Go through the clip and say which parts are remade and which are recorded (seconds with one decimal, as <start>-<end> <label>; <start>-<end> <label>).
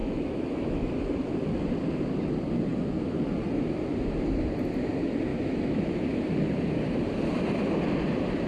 0.0-1.0 remade; 1.0-5.3 recorded; 5.3-5.8 remade; 5.8-8.5 recorded